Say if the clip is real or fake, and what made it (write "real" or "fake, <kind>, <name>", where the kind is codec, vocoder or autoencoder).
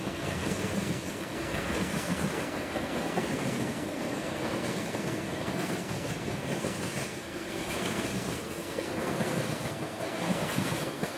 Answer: fake, codec, SNAC